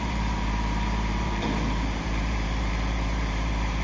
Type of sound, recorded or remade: remade